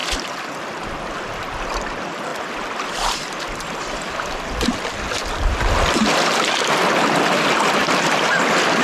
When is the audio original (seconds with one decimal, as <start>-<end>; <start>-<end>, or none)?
0.0-7.8; 8.4-8.8

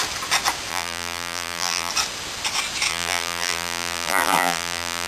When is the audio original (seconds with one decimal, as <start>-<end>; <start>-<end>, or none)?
0.0-0.7; 1.9-2.9

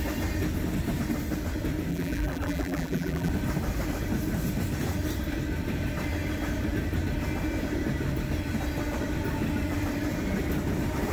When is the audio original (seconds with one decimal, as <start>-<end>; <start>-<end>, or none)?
0.0-1.9; 3.3-11.1